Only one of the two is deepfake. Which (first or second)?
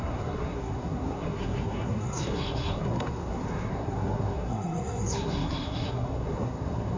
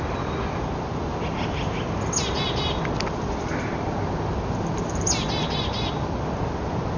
first